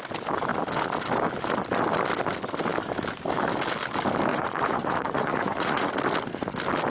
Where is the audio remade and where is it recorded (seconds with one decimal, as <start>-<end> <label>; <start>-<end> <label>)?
0.0-4.3 recorded; 4.3-5.9 remade; 5.9-6.9 recorded